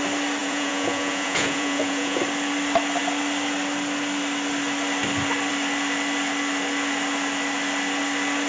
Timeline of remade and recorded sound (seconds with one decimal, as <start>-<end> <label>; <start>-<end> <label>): 0.0-0.4 recorded; 0.4-2.2 remade; 2.2-8.5 recorded